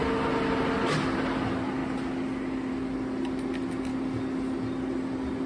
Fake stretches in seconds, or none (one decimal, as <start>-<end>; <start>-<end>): none